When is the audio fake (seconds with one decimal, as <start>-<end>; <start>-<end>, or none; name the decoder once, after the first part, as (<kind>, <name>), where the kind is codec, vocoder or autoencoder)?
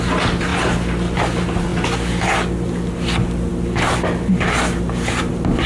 none